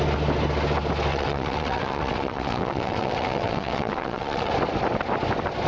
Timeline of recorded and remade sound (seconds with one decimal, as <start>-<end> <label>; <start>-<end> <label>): 0.0-1.1 recorded; 1.1-4.5 remade; 4.5-5.7 recorded